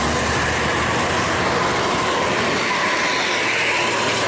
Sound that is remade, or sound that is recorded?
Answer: recorded